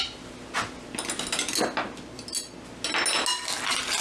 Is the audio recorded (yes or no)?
yes